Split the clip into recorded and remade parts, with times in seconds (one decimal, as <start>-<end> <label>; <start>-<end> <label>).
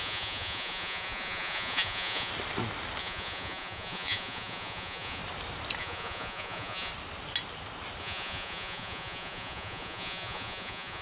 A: 0.0-2.3 remade; 2.3-3.0 recorded; 3.0-5.2 remade; 5.2-5.8 recorded; 5.8-6.9 remade; 6.9-8.0 recorded; 8.0-11.0 remade